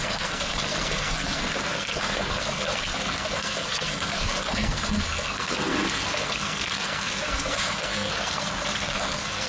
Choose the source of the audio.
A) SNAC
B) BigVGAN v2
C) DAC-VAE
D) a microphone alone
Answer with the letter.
A